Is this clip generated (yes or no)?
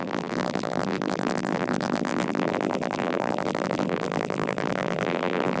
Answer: yes